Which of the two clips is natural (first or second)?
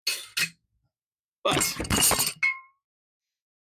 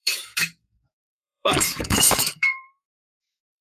first